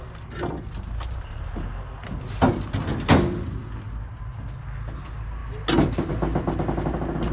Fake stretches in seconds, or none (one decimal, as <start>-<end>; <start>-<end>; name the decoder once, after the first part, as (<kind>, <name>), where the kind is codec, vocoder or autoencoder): none